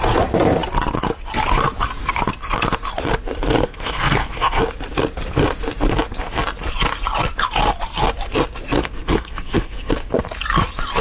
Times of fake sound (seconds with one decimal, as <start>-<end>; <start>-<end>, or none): 3.6-4.6; 8.8-9.9